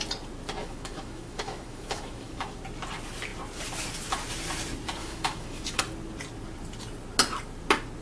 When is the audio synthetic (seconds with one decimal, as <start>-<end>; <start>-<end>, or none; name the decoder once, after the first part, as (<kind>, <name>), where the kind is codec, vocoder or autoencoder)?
0.6-2.6 (autoencoder, DAC-VAE); 5.0-5.8